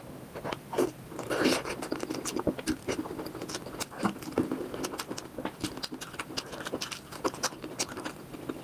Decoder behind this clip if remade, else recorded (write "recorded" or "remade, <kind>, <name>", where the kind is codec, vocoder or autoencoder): recorded